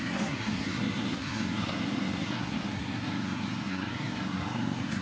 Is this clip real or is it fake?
fake